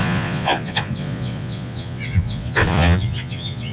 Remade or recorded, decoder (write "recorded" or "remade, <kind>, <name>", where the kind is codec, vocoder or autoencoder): remade, vocoder, Vocos